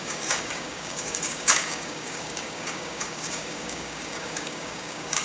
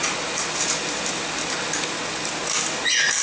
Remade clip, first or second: first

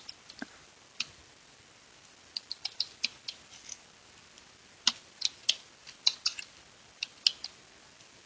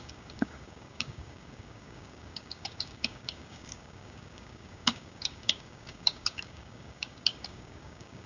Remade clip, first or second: second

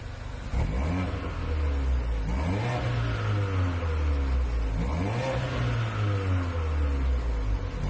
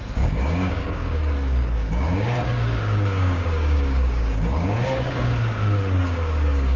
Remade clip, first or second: second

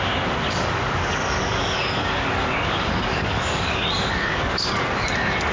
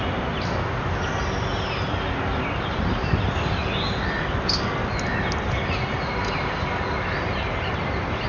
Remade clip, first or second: first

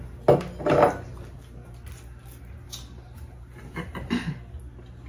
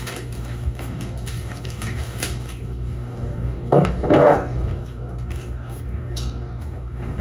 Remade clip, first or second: second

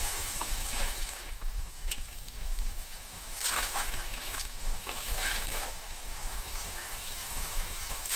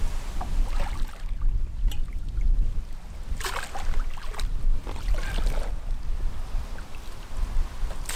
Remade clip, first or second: first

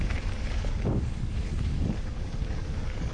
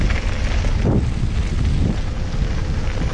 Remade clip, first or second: first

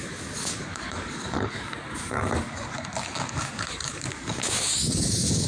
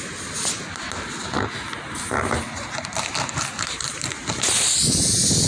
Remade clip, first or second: first